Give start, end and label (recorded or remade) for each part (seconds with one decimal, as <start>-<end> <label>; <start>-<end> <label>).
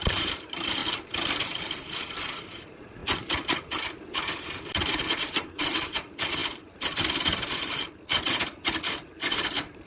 0.0-0.8 remade; 0.8-2.4 recorded; 2.4-6.4 remade; 6.4-9.3 recorded; 9.3-9.9 remade